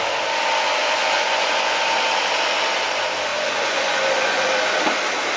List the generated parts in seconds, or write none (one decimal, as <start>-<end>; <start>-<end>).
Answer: 0.8-1.8; 3.3-4.6